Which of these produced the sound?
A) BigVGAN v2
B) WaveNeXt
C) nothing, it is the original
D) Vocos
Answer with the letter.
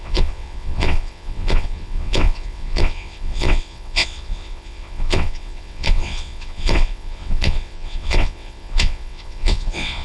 B